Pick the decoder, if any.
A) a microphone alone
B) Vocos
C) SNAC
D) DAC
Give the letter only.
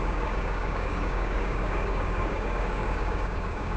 D